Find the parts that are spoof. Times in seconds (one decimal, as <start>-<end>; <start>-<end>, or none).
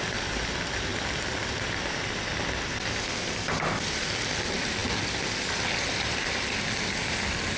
0.0-0.9; 2.6-7.6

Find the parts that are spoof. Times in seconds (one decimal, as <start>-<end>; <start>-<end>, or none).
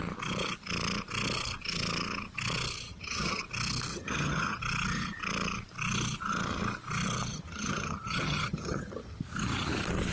2.9-3.4; 3.9-4.6; 7.3-9.2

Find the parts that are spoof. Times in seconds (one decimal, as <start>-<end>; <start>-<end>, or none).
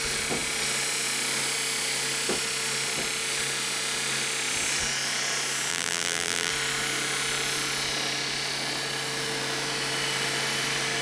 5.7-6.5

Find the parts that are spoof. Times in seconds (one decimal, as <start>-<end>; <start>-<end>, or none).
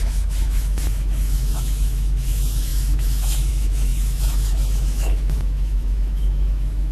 0.0-6.9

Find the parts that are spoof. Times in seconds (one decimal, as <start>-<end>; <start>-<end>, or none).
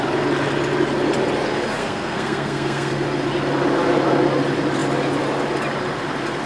1.8-2.9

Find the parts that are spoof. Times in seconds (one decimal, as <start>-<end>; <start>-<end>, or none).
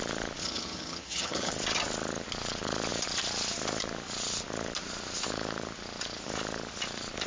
0.4-1.5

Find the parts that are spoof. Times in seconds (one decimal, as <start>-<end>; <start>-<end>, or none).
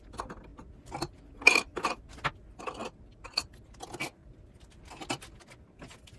none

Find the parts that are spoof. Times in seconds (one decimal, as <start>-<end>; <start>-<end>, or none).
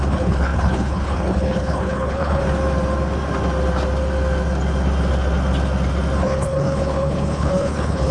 0.0-2.4; 6.2-8.1